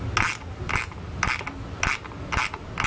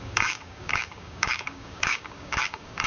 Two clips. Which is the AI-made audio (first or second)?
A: second